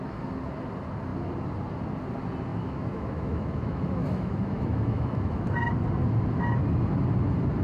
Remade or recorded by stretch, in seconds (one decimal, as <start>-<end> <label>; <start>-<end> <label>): 0.0-2.5 recorded; 2.5-5.5 remade; 5.5-7.6 recorded